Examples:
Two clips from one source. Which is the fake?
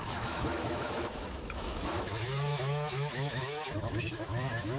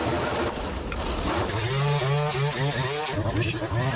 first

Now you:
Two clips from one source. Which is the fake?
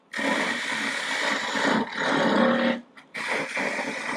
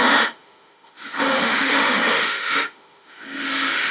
second